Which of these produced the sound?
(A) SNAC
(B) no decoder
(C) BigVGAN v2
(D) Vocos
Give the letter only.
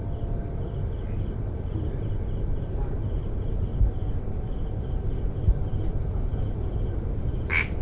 B